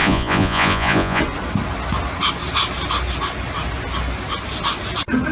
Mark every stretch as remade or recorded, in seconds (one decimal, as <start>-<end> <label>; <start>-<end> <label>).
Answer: 0.0-1.2 remade; 1.2-5.3 recorded